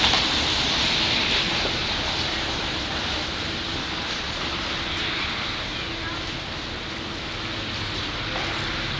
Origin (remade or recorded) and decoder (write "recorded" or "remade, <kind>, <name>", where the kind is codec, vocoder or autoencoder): recorded